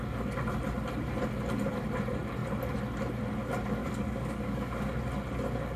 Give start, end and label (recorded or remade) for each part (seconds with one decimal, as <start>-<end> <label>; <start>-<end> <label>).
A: 0.0-3.8 recorded; 3.8-5.0 remade; 5.0-5.8 recorded